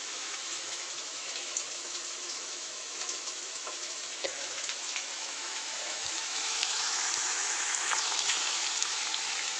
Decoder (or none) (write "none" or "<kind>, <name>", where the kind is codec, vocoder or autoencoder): autoencoder, DAC-VAE